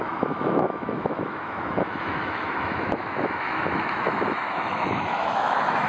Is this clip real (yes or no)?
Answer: no